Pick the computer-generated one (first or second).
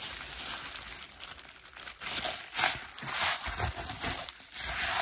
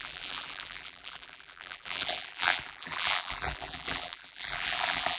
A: second